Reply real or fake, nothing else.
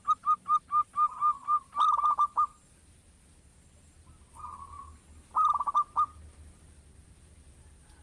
real